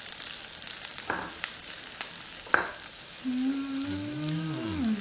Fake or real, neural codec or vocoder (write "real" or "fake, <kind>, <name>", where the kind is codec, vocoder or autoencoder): real